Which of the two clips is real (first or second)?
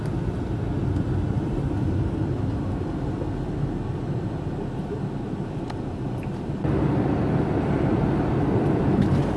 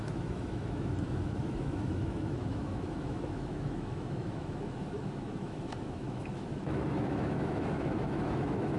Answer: first